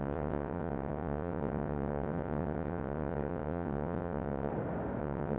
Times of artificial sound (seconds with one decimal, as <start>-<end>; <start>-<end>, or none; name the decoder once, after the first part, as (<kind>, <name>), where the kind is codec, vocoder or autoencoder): 0.0-4.5 (vocoder, WaveNeXt); 5.0-5.4